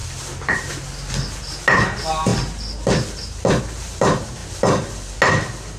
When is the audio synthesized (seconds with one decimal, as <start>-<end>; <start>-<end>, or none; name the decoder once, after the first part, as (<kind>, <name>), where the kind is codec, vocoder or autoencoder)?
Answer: none